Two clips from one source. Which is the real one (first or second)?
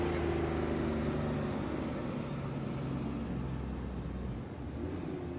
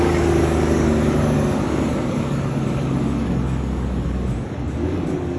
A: first